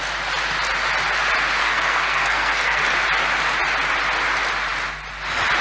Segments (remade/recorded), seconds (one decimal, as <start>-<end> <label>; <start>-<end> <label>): 0.0-1.6 recorded; 1.6-2.8 remade; 2.8-5.6 recorded